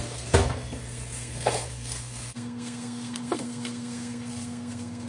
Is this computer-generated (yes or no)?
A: yes